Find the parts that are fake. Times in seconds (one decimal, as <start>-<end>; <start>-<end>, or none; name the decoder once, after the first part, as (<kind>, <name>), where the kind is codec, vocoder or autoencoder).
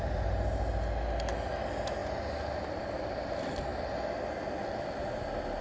none